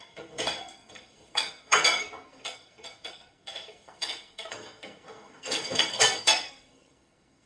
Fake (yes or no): yes